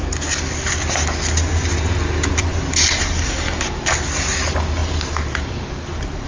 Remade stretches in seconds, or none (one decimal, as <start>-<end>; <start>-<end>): none